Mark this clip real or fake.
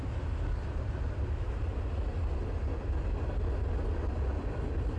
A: real